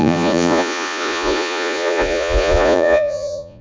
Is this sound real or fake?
fake